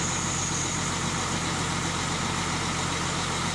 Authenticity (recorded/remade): recorded